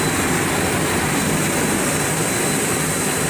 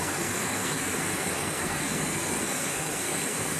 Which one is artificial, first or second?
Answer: second